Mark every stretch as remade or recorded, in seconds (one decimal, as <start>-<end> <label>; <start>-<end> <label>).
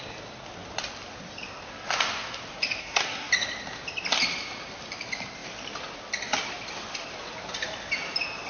0.0-2.8 recorded; 2.8-3.3 remade; 3.3-8.5 recorded